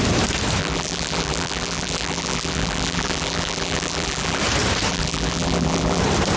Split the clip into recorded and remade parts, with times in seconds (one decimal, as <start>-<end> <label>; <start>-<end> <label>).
0.0-0.6 recorded; 0.6-4.4 remade; 4.4-4.9 recorded; 4.9-6.0 remade; 6.0-6.4 recorded